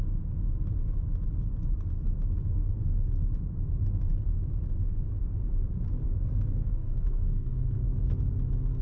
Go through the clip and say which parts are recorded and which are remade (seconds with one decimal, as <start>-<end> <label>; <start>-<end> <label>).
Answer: 0.0-2.6 recorded; 2.6-3.1 remade; 3.1-6.0 recorded; 6.0-8.2 remade; 8.2-8.8 recorded

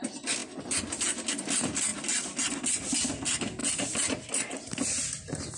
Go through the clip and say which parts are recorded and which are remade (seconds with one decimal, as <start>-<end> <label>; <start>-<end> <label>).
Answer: 0.0-5.6 recorded